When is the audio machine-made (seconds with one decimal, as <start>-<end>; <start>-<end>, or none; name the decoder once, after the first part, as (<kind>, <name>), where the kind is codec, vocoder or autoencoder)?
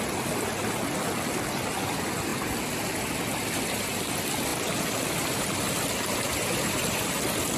4.5-7.1 (vocoder, BigVGAN v2)